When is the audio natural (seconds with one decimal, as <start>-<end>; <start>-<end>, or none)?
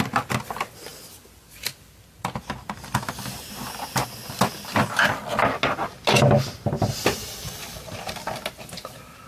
0.0-9.3